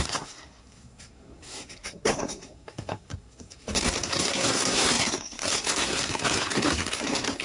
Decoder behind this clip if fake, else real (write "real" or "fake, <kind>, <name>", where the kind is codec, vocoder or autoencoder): fake, codec, SNAC